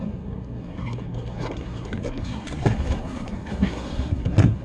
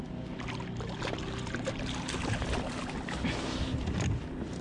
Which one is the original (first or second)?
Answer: second